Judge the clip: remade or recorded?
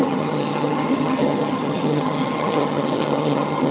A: remade